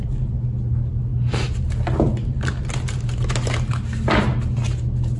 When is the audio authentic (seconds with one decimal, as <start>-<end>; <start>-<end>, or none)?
0.0-5.2